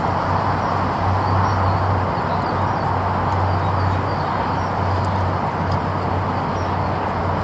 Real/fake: fake